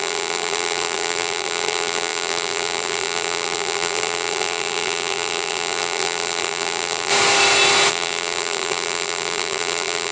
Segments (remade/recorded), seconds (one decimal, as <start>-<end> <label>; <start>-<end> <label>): 0.0-7.1 remade; 7.1-7.9 recorded; 7.9-10.1 remade